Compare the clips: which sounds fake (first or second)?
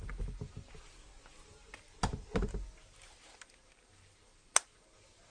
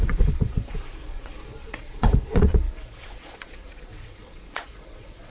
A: second